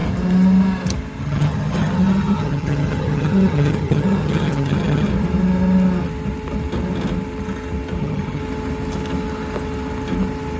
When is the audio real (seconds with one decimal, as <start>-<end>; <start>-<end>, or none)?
0.0-1.2; 5.1-8.0; 8.4-10.6